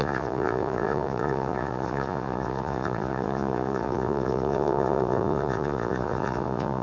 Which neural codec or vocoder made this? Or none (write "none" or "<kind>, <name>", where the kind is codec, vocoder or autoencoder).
vocoder, Vocos